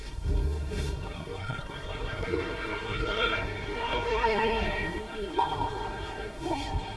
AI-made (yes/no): yes